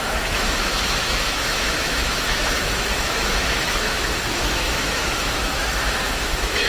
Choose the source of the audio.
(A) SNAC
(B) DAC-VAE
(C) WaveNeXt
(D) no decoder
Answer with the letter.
B